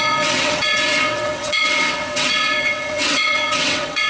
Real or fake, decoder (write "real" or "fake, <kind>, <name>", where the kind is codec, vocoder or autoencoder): fake, vocoder, WaveNeXt